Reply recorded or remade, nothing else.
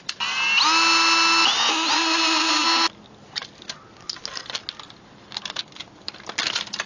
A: recorded